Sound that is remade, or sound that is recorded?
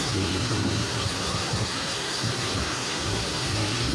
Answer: remade